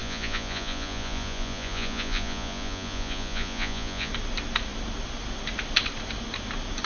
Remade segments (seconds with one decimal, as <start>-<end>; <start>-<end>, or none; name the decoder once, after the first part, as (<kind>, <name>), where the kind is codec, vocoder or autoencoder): 0.0-4.1 (vocoder, Vocos)